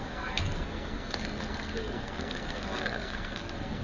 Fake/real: fake